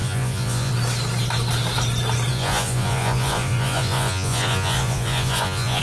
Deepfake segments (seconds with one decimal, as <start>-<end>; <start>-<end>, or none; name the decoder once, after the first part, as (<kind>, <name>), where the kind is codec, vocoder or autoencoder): 0.0-0.7 (vocoder, Vocos); 2.3-5.8